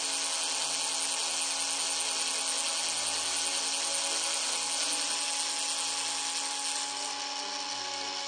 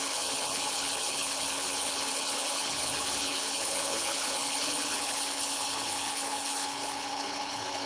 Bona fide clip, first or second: first